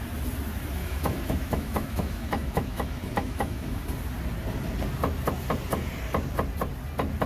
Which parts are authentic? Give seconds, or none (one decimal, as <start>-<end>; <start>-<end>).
0.0-0.8; 3.8-7.3